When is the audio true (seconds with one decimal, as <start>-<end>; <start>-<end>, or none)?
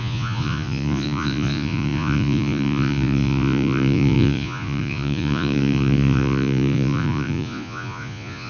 none